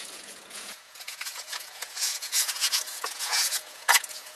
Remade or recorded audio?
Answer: remade